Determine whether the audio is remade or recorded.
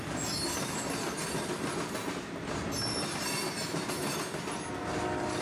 recorded